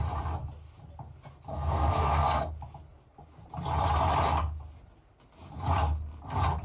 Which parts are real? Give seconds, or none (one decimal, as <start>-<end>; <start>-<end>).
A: 0.0-1.5; 2.5-6.6